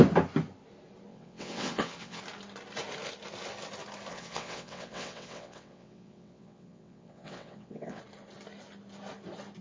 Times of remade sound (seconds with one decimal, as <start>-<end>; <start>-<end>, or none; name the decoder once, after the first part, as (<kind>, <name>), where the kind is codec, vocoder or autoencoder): 1.1-2.2 (vocoder, WaveNeXt); 4.1-8.0